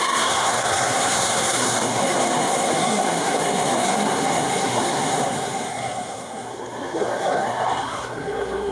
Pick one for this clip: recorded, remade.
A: remade